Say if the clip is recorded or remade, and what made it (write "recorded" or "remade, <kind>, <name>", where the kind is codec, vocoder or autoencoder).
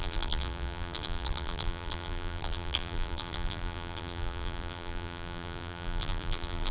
remade, vocoder, BigVGAN v2